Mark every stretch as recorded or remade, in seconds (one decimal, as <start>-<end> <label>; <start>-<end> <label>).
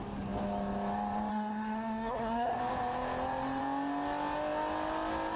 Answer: 0.0-1.3 recorded; 1.3-2.6 remade; 2.6-5.4 recorded